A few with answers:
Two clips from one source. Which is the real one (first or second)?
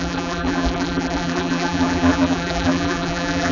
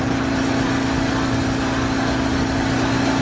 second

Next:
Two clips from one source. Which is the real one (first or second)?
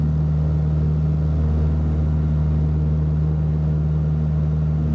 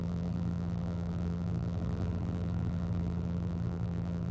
first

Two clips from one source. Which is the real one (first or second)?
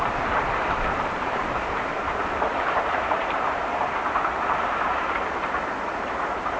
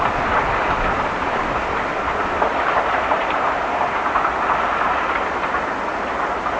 second